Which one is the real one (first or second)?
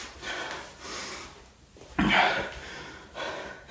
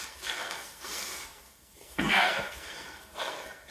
first